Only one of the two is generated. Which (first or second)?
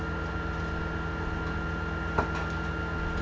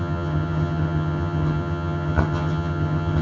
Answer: second